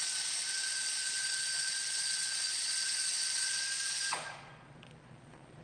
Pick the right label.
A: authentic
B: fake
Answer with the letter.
B